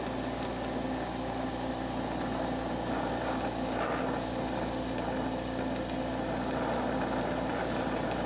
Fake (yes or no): no